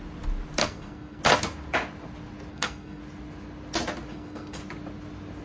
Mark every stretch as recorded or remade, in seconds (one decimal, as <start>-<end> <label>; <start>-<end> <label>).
0.0-0.6 recorded; 0.6-1.2 remade; 1.2-2.5 recorded; 2.5-3.0 remade; 3.0-4.1 recorded; 4.1-4.6 remade; 4.6-5.4 recorded

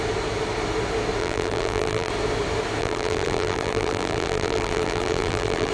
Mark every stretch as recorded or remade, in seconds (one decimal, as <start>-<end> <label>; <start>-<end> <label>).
0.0-1.2 recorded; 1.2-2.1 remade; 2.1-2.8 recorded; 2.8-5.7 remade

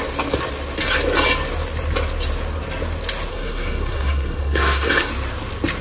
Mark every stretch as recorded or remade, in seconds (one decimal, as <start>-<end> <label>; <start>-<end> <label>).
0.0-3.3 recorded; 3.3-5.1 remade; 5.1-5.8 recorded

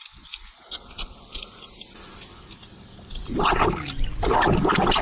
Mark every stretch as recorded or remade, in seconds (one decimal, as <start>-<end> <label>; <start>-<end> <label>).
0.0-5.0 recorded

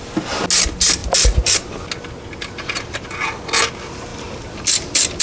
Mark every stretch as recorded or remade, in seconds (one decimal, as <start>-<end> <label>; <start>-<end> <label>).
0.0-5.2 recorded

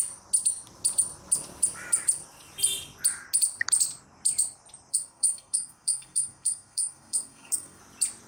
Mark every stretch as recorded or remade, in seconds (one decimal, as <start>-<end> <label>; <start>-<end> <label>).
0.0-4.9 recorded; 4.9-7.8 remade; 7.8-8.3 recorded

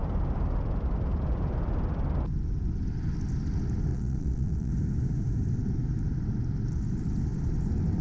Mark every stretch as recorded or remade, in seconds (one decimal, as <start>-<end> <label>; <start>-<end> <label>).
0.0-3.9 recorded; 3.9-4.7 remade; 4.7-8.0 recorded

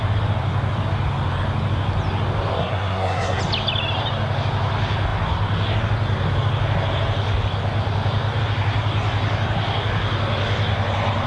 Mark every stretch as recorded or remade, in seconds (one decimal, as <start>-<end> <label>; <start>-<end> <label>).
0.0-2.6 recorded; 2.6-3.4 remade; 3.4-11.3 recorded